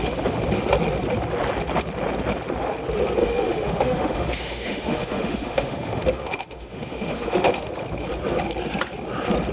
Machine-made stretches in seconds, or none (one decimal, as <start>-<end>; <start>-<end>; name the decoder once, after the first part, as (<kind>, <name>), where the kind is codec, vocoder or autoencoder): 3.2-7.7 (autoencoder, DAC-VAE)